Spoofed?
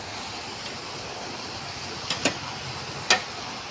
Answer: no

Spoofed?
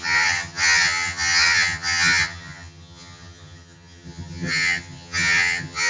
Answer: yes